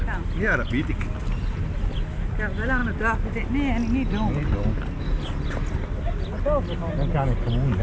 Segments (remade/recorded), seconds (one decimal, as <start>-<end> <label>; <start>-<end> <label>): 0.0-7.8 recorded